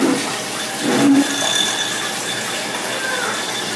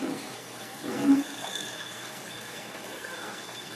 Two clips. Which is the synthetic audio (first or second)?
second